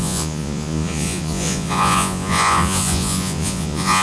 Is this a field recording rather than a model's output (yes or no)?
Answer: no